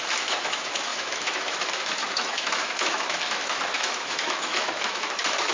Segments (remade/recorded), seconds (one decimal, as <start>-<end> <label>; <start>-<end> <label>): 0.0-5.5 remade